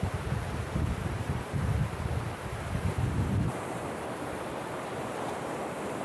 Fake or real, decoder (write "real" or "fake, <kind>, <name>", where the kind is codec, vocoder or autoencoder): fake, vocoder, BigVGAN v2